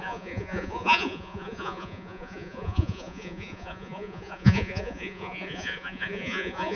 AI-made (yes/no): yes